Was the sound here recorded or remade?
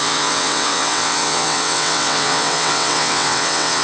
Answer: remade